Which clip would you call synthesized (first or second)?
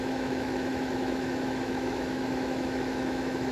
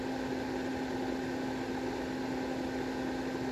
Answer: first